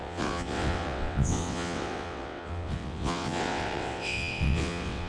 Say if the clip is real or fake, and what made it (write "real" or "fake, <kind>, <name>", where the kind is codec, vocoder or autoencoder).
fake, vocoder, WaveNeXt